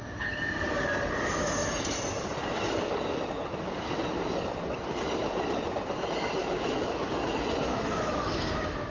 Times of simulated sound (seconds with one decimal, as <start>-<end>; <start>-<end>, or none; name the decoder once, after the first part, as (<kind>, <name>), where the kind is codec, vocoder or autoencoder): 6.4-7.0 (autoencoder, DAC-VAE); 7.7-8.9